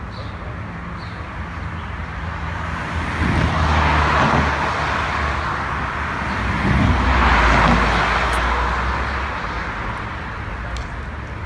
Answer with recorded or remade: recorded